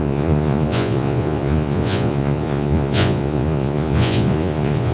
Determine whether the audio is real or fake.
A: fake